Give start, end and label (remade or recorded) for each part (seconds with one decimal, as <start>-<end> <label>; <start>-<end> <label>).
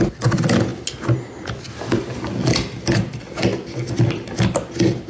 0.0-5.1 recorded